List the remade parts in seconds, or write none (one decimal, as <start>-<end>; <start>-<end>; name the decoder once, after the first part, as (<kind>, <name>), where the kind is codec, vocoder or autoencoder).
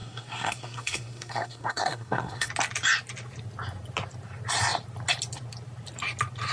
0.0-2.5 (codec, SNAC)